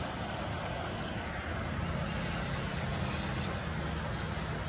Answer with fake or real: real